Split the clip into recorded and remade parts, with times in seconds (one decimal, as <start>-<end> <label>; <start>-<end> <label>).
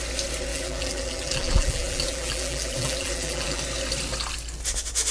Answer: 0.0-0.5 recorded; 0.5-3.6 remade; 3.6-5.1 recorded